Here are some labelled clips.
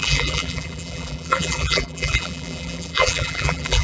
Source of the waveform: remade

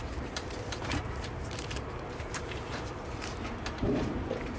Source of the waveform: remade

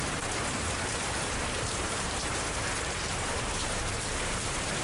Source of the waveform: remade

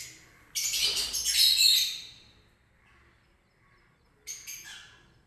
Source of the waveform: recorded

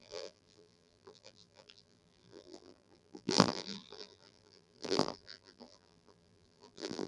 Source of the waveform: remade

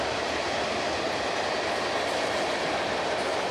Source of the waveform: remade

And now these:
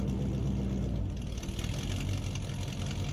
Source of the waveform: recorded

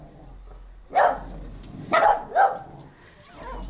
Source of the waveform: recorded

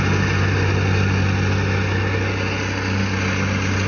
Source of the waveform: recorded